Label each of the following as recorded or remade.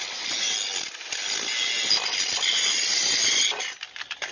recorded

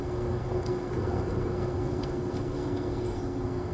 remade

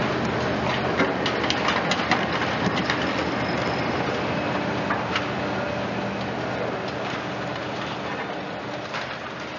recorded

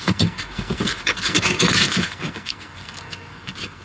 remade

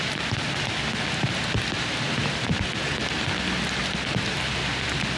recorded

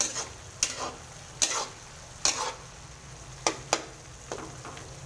recorded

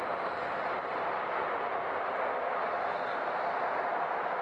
recorded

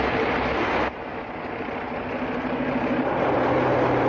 recorded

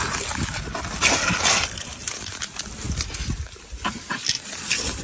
recorded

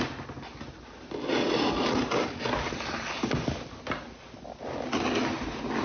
recorded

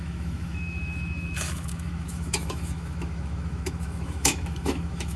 remade